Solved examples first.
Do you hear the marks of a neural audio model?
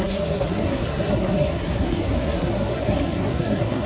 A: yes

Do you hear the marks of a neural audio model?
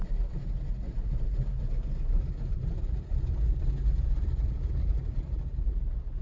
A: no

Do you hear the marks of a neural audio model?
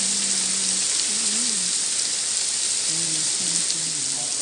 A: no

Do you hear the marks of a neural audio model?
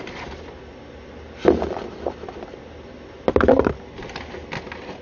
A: no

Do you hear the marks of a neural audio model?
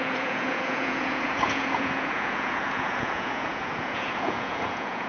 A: yes